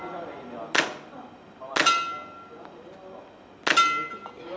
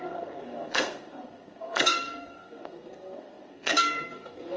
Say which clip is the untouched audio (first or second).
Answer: first